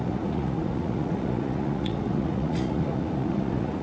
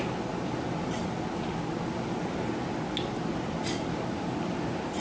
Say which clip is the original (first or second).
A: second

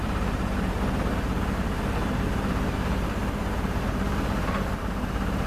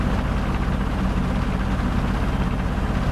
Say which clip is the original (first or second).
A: second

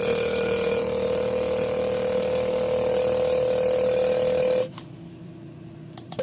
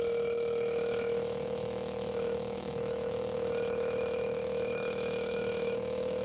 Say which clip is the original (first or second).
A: first